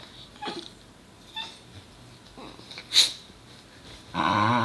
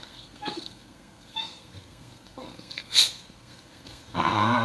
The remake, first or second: second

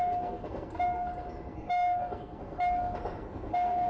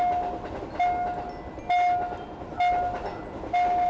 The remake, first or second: first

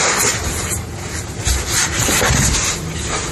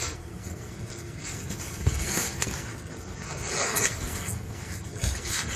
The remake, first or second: second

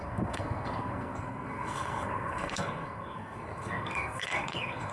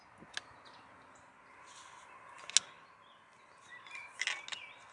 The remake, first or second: first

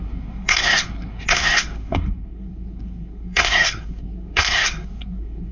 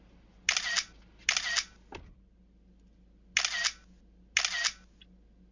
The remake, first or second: first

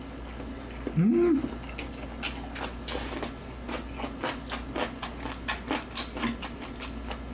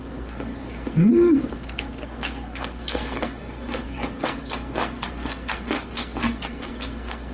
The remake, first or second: second